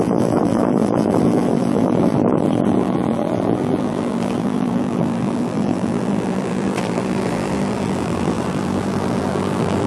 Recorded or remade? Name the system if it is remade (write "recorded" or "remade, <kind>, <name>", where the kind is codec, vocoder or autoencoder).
remade, vocoder, BigVGAN v2